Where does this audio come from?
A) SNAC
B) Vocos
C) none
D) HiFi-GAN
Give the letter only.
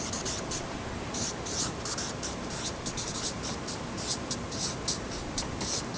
C